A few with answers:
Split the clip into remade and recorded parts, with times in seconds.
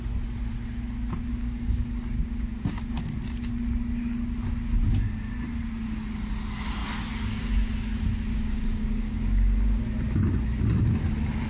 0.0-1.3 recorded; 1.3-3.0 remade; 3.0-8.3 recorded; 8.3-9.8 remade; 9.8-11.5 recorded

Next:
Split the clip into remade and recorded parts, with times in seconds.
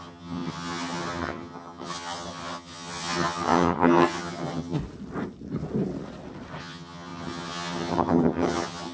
0.0-4.8 remade; 4.8-6.6 recorded; 6.6-8.9 remade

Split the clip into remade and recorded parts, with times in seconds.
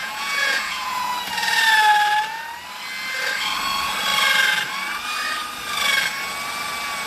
0.0-1.1 remade; 1.1-7.1 recorded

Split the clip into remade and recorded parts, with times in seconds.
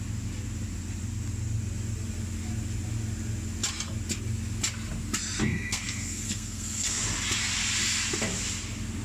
0.0-5.5 recorded; 5.5-7.0 remade; 7.0-9.0 recorded